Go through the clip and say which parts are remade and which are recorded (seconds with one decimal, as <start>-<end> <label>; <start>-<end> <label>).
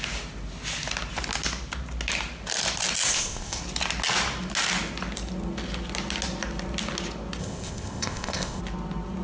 0.0-3.1 recorded; 3.1-3.6 remade; 3.6-7.4 recorded; 7.4-8.6 remade; 8.6-9.2 recorded